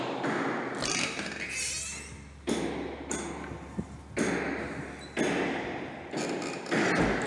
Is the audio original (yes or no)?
yes